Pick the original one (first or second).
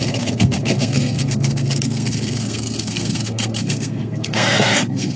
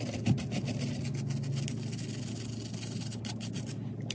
second